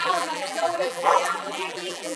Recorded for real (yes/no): no